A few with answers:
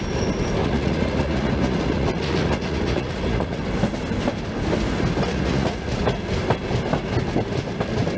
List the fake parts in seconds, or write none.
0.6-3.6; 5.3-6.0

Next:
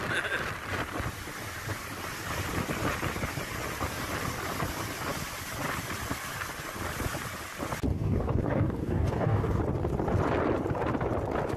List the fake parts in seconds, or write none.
7.9-9.6

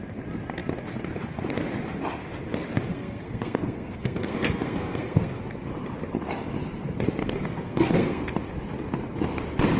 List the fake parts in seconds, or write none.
2.9-5.4; 7.2-8.2

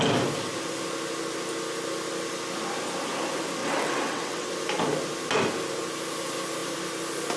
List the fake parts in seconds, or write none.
3.6-4.5

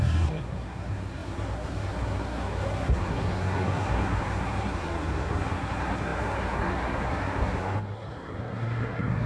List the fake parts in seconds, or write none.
0.0-9.3